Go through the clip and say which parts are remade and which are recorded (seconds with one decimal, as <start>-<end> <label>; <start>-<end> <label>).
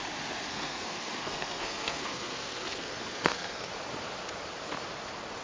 0.0-0.5 recorded; 0.5-3.7 remade; 3.7-5.4 recorded